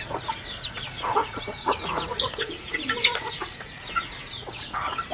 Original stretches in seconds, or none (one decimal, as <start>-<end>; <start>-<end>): none